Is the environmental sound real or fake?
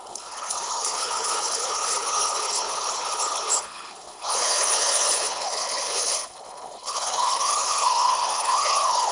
fake